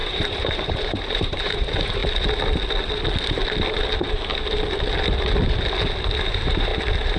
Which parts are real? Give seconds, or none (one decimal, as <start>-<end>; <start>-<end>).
2.0-6.3